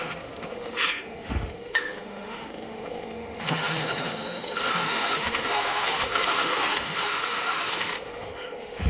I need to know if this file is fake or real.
fake